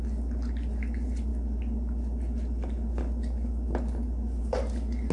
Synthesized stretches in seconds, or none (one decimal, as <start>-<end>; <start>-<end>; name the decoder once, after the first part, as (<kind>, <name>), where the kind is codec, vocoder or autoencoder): none